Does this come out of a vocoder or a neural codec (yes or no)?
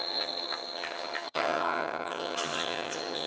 yes